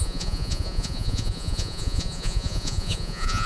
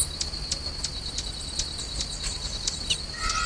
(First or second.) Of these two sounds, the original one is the second